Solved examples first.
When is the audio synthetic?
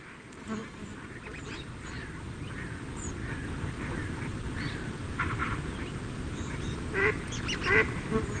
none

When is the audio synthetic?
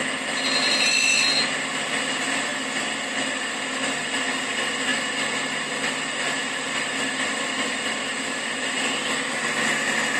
none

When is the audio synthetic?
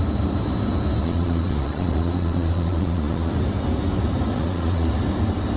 1.0-3.3 (vocoder, Vocos); 4.3-4.9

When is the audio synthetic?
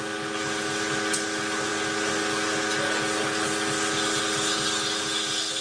none